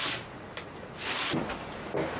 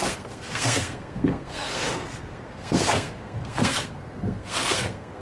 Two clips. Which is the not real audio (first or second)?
second